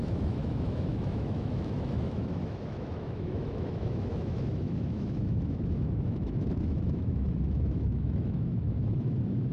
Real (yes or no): no